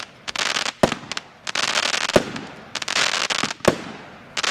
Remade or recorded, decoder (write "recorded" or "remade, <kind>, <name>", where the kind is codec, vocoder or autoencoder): recorded